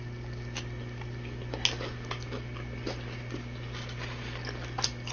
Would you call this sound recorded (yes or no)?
yes